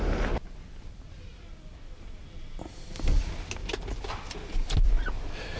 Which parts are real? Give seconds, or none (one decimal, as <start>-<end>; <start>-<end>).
0.0-5.6